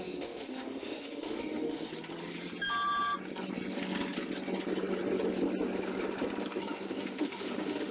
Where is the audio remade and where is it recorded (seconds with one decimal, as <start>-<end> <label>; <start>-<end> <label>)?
0.0-1.9 remade; 1.9-6.6 recorded; 6.6-7.9 remade